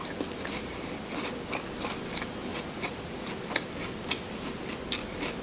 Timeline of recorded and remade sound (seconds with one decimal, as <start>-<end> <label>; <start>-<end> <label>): 0.0-2.5 recorded; 2.5-3.3 remade; 3.3-5.4 recorded